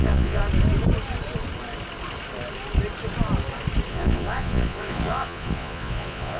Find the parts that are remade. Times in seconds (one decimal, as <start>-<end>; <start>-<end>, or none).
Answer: 0.0-0.4; 3.9-6.4